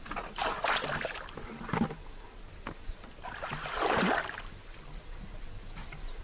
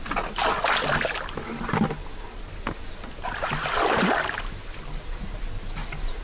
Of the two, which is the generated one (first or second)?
first